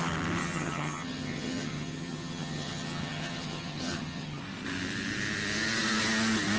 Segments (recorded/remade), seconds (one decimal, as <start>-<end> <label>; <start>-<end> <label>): 0.0-0.4 recorded; 0.4-4.4 remade; 4.4-6.6 recorded